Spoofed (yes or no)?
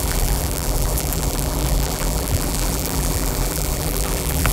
yes